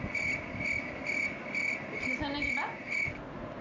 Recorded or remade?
recorded